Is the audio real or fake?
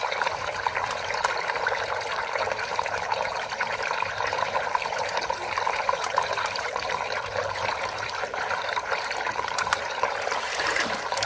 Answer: fake